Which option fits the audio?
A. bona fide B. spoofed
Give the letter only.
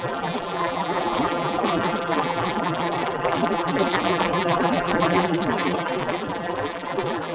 B